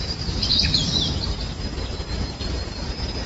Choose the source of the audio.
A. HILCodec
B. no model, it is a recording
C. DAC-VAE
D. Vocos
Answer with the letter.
B